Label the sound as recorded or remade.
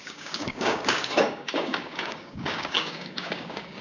remade